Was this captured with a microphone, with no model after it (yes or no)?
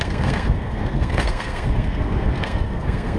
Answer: no